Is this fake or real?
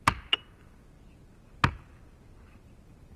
real